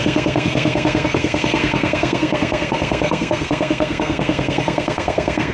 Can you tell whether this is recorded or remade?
remade